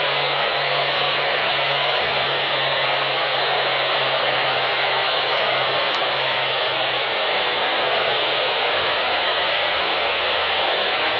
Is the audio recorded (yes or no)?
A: no